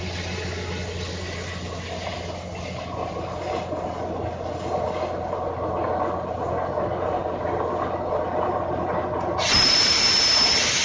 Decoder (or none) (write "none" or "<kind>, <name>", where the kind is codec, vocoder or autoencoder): none